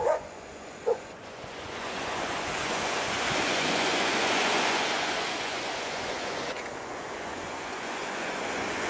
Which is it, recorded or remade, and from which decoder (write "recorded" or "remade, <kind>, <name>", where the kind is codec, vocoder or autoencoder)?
remade, vocoder, Vocos